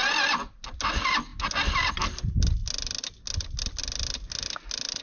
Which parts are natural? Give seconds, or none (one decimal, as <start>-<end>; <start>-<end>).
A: 0.0-5.0